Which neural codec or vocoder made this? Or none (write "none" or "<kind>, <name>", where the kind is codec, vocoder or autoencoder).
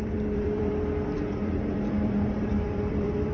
vocoder, BigVGAN v2